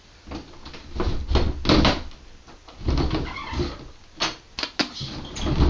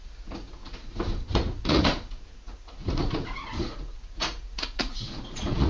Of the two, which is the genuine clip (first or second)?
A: first